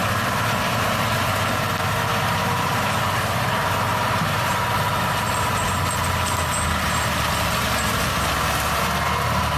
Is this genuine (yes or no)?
yes